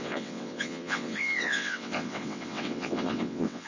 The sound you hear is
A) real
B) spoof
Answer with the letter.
B